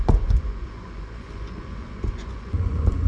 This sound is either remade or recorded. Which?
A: remade